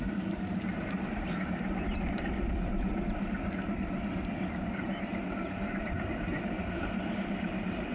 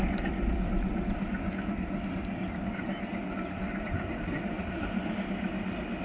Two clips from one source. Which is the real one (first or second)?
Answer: second